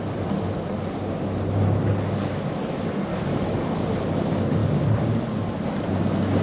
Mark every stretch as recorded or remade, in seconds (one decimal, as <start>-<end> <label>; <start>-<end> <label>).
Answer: 0.0-3.1 recorded; 3.1-3.9 remade; 3.9-6.4 recorded